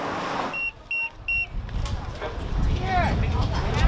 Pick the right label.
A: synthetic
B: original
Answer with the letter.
B